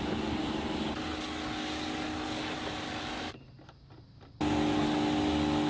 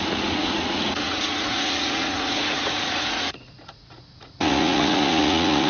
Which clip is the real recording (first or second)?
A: first